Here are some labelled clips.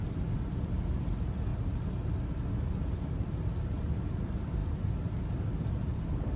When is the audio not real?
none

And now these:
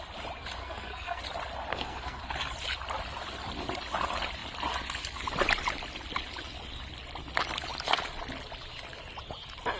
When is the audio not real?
0.6-1.2 (codec, SNAC); 1.7-2.2

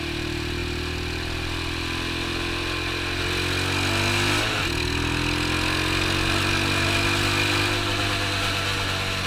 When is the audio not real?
none

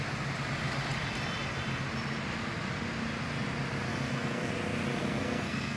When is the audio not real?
3.9-4.5 (codec, SNAC); 5.0-5.8

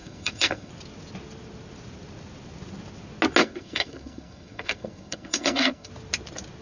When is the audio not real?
0.0-0.7 (codec, SNAC); 3.4-5.9

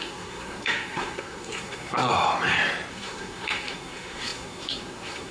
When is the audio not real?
0.0-2.1 (codec, SNAC); 2.9-5.3

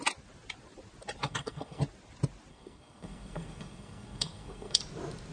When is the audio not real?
1.2-1.8 (codec, SNAC); 2.5-4.8

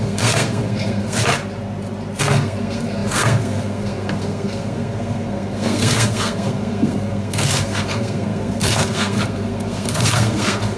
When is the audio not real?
0.0-1.3 (codec, SNAC); 2.2-10.8